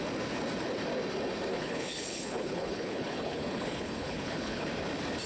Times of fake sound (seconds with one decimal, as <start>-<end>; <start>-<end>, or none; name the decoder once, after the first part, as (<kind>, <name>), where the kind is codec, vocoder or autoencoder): 1.5-4.7 (codec, HILCodec)